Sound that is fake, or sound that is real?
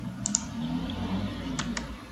fake